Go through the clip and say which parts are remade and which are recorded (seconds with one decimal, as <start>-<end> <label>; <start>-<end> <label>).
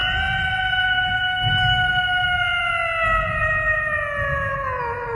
0.0-5.2 recorded